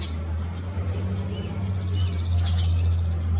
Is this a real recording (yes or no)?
yes